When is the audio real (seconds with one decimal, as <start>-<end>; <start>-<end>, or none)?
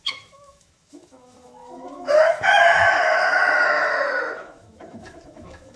none